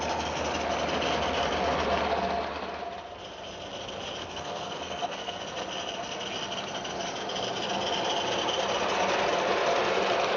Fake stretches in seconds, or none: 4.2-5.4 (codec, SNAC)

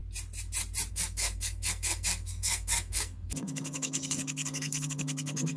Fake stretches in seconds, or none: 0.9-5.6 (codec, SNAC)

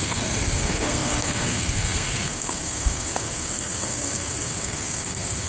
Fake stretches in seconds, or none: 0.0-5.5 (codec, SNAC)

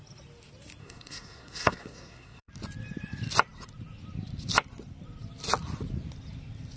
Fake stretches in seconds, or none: 0.8-2.5 (codec, SNAC)